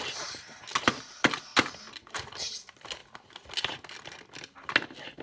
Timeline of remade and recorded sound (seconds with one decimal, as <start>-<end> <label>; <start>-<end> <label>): 0.0-5.2 recorded